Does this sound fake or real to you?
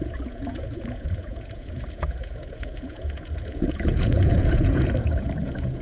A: fake